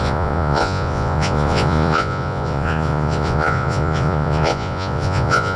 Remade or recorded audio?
remade